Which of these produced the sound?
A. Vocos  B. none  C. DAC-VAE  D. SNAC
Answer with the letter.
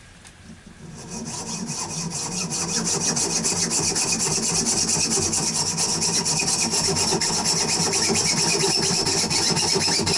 B